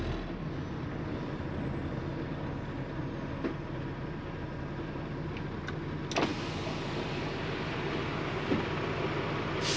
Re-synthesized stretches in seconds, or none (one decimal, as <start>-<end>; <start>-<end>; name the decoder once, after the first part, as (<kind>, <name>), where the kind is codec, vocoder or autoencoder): none